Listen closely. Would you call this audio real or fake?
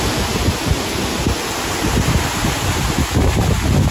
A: real